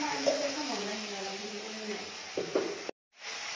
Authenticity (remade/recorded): recorded